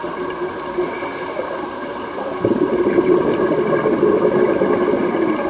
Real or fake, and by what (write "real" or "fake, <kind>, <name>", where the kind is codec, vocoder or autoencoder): real